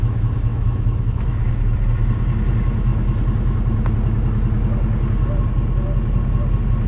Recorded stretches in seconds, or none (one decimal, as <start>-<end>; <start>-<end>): 0.0-0.5; 1.5-6.9